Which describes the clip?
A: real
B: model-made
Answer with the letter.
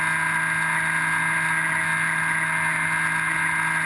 A